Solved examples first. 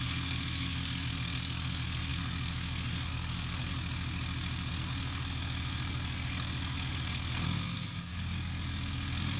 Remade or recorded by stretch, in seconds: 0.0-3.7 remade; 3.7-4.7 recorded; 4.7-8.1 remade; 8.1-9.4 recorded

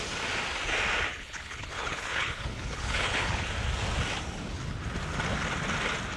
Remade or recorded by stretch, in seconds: 0.0-1.1 recorded; 1.1-3.5 remade; 3.5-6.2 recorded

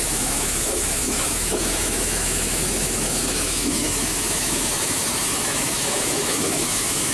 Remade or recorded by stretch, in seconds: 0.0-7.1 remade

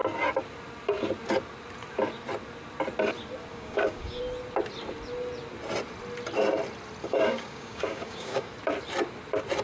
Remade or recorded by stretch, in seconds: 0.0-3.5 recorded; 3.5-4.2 remade; 4.2-7.0 recorded; 7.0-8.5 remade; 8.5-9.6 recorded

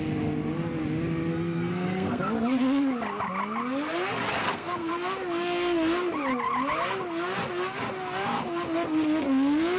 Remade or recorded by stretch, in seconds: 0.0-1.3 recorded; 1.3-2.2 remade; 2.2-4.4 recorded; 4.4-4.9 remade; 4.9-9.8 recorded

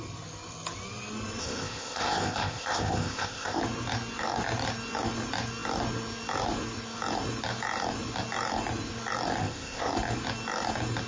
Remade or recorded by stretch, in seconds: 0.0-1.4 recorded; 1.4-3.6 remade; 3.6-9.4 recorded; 9.4-9.9 remade; 9.9-11.1 recorded